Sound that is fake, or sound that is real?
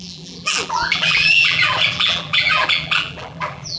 fake